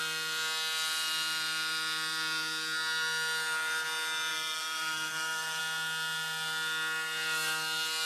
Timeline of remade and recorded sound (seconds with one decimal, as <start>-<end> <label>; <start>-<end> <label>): 0.0-4.3 recorded; 4.3-5.6 remade; 5.6-8.1 recorded